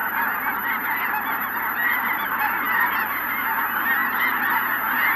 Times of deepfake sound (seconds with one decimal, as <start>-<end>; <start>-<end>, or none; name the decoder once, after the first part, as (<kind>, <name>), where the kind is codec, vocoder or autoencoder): 0.0-3.1 (vocoder, BigVGAN v2); 4.0-4.5